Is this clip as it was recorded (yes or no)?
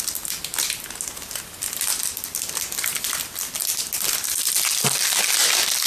yes